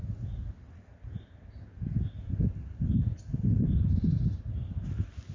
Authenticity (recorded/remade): recorded